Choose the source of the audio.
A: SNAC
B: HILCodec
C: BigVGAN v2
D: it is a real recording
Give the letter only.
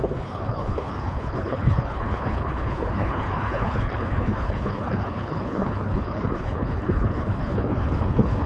B